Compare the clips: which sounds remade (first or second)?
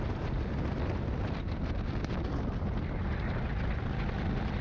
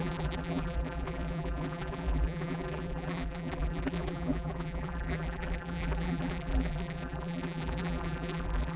second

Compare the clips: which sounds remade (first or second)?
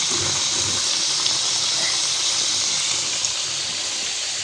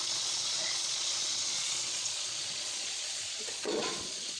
second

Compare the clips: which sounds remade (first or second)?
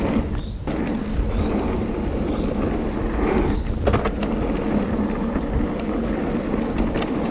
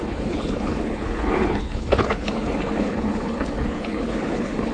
second